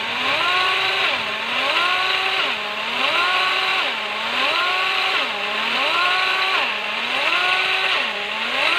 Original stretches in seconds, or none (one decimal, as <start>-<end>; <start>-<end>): 1.0-3.0; 3.7-4.7